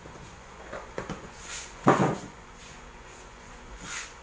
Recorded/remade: remade